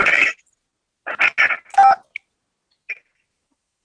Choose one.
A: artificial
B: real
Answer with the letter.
B